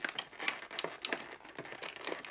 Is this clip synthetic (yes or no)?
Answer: no